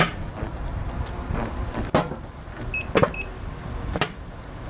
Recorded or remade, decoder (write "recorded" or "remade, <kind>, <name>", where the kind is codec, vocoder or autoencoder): recorded